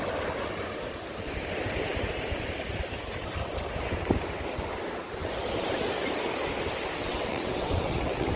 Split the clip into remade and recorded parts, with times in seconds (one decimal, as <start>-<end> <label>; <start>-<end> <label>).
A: 0.0-7.0 recorded; 7.0-8.4 remade